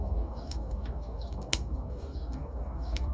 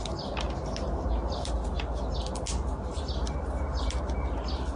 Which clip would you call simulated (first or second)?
first